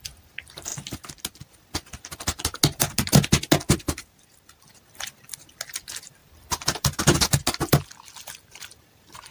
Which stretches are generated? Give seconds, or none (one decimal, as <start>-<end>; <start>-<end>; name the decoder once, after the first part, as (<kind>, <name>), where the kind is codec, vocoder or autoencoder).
6.2-7.0 (vocoder, BigVGAN v2)